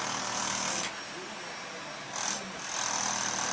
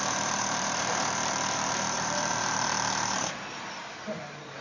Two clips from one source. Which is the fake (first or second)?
second